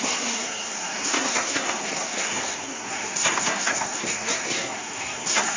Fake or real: fake